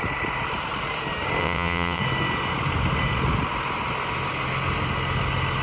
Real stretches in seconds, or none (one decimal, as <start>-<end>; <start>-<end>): 0.0-1.4; 2.0-5.6